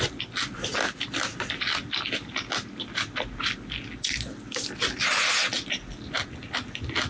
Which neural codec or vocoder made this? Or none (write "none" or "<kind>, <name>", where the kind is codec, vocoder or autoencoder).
none